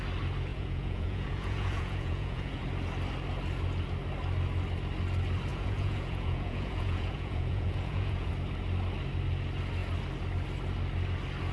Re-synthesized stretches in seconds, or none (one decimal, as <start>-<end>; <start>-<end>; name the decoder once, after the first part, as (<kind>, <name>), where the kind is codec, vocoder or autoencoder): 0.5-2.6 (vocoder, Vocos); 5.5-8.3